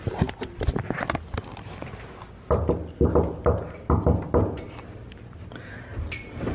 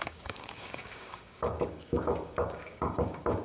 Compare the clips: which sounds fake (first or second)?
second